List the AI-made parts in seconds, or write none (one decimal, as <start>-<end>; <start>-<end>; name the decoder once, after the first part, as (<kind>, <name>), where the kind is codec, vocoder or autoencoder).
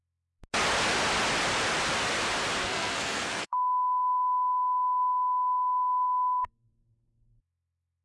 2.6-7.4 (codec, SNAC)